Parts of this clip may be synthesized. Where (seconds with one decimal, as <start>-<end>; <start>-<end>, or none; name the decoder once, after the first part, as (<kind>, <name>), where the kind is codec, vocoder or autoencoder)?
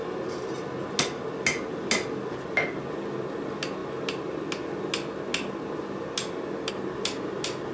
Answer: none